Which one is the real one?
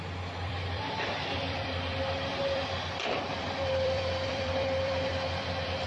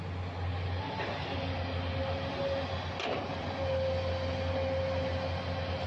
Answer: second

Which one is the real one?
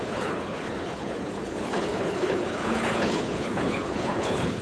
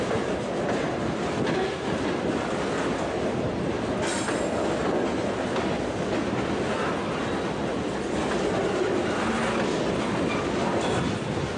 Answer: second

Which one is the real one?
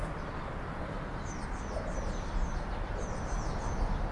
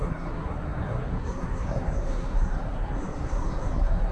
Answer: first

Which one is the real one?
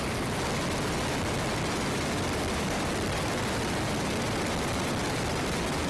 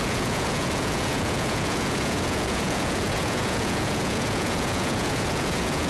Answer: first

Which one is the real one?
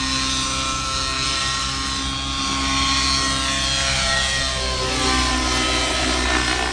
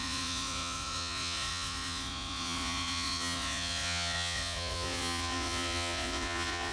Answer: first